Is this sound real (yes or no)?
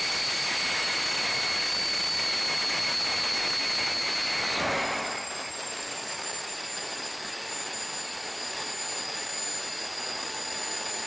yes